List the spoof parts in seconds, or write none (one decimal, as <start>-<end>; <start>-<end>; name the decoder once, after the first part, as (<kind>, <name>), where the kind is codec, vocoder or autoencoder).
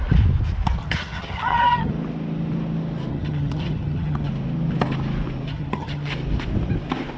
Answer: 0.8-1.9 (vocoder, HiFi-GAN); 3.1-4.3; 5.5-6.1